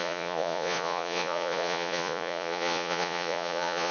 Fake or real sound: fake